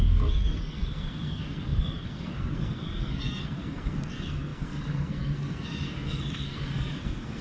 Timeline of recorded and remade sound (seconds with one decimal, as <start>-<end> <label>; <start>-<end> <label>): 0.0-7.4 remade